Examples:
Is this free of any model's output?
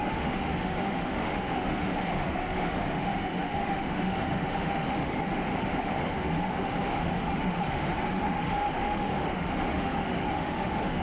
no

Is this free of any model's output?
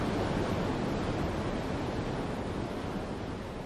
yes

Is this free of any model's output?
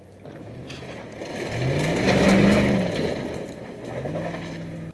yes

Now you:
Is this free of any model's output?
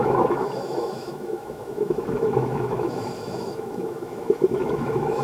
no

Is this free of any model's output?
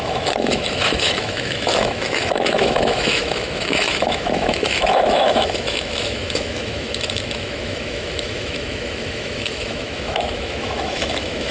no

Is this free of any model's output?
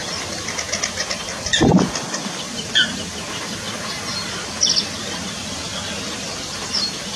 yes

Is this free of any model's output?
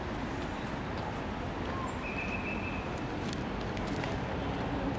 yes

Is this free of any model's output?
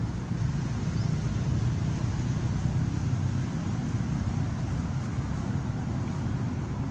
yes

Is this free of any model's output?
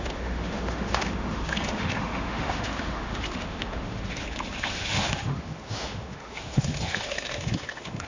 no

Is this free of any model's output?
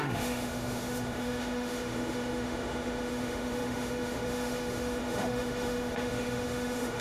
no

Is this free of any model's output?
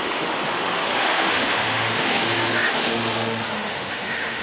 no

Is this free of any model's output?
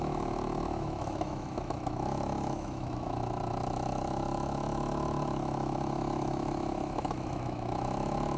no